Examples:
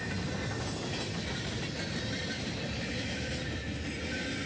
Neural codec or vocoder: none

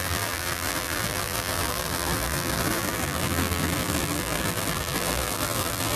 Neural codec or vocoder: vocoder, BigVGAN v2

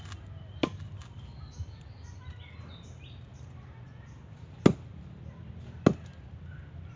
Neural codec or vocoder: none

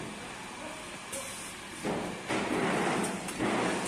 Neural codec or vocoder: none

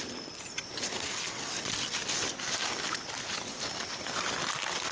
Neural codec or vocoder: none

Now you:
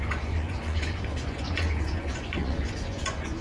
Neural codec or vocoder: vocoder, Vocos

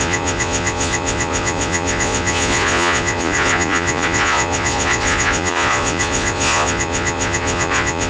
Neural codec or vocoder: vocoder, Vocos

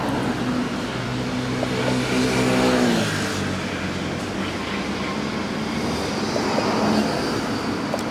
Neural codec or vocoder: none